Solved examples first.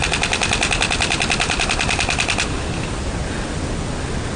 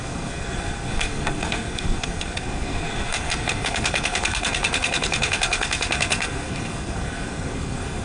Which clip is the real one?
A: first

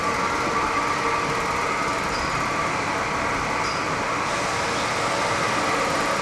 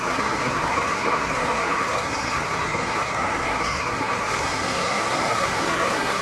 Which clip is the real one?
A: first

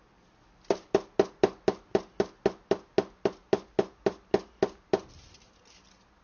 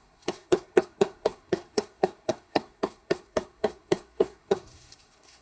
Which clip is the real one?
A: first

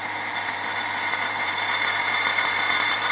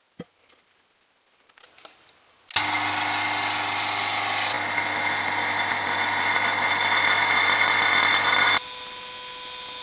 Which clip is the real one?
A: second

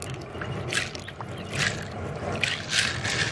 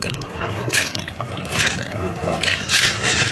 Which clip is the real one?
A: first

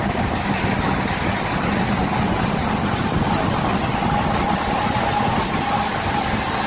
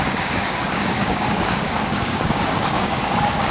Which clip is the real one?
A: first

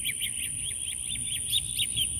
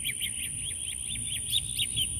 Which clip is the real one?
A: second